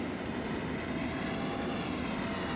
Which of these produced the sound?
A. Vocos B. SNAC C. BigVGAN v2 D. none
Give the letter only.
D